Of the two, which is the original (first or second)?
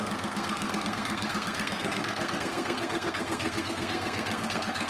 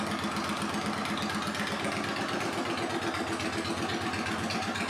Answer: second